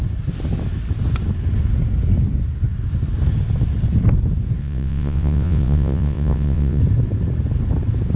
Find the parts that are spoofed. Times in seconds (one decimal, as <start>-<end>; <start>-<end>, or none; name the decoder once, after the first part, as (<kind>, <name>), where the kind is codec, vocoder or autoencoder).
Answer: 4.6-6.8 (vocoder, WaveNeXt)